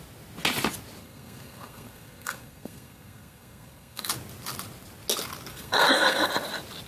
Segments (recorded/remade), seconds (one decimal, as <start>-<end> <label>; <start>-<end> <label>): 0.0-1.0 recorded; 1.0-4.1 remade; 4.1-5.5 recorded; 5.5-6.3 remade; 6.3-6.9 recorded